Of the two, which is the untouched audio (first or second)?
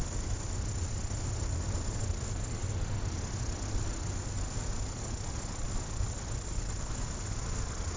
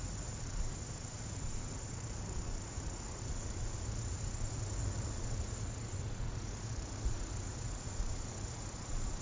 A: first